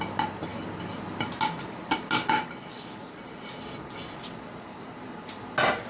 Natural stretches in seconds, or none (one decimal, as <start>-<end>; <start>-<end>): 0.0-5.9